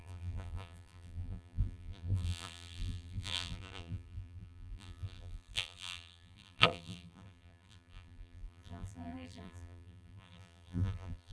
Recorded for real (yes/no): no